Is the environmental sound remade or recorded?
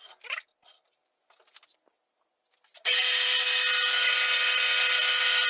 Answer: recorded